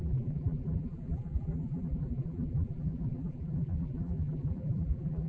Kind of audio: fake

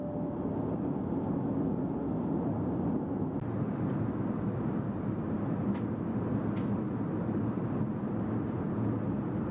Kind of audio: real